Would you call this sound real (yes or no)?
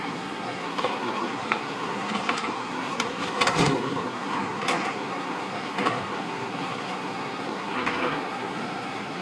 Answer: no